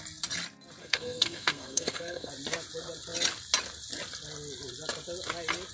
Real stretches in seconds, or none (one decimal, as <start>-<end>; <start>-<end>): 0.0-0.8; 2.3-5.7